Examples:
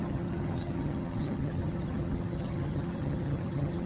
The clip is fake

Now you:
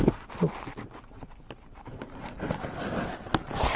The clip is real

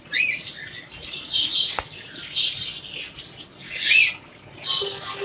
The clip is fake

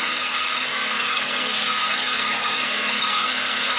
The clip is fake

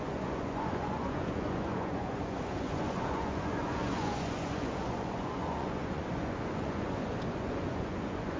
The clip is fake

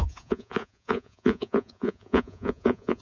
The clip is fake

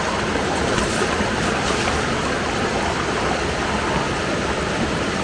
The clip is real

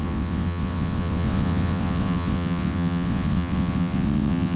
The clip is fake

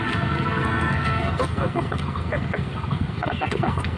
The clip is fake